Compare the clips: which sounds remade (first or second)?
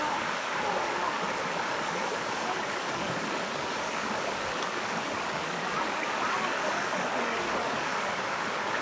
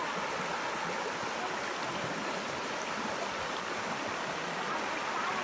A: first